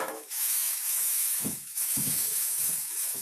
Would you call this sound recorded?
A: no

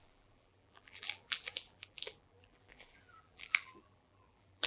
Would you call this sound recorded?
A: no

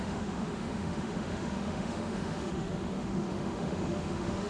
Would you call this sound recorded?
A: no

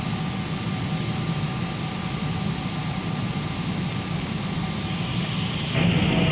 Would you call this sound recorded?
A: yes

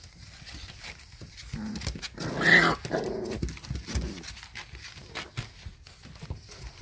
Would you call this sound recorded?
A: yes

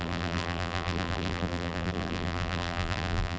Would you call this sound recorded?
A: no